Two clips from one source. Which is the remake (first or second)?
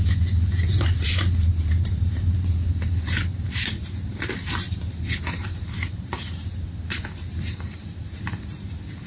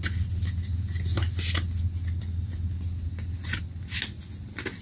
first